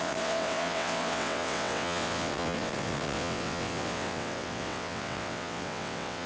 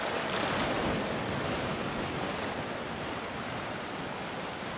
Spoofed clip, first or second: first